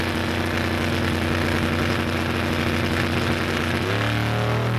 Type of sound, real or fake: real